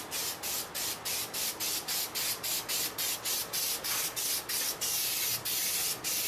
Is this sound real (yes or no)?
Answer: yes